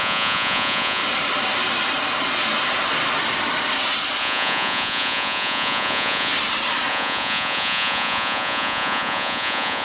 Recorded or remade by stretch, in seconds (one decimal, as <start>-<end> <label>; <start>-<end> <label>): 0.0-1.0 remade; 1.0-4.2 recorded; 4.2-6.3 remade; 6.3-6.9 recorded; 6.9-9.8 remade